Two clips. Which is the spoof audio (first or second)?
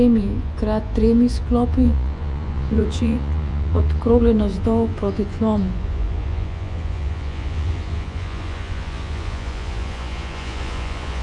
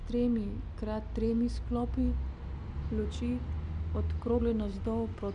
first